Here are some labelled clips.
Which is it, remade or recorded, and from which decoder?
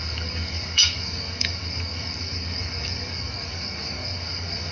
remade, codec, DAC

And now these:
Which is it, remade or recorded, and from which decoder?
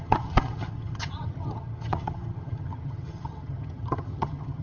remade, vocoder, HiFi-GAN